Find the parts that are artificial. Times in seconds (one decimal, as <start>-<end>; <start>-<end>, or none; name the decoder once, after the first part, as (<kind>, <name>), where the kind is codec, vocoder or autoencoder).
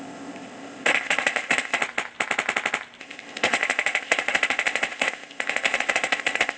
0.0-1.8 (codec, ZipCodec); 3.0-6.6